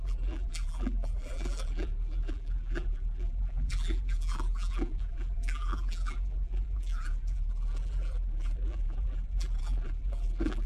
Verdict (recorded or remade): remade